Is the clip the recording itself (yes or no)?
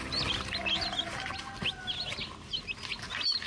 yes